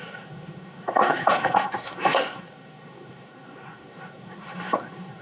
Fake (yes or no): yes